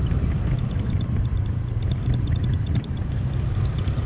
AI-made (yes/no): yes